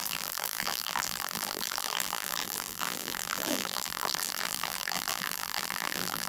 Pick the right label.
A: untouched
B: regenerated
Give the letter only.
B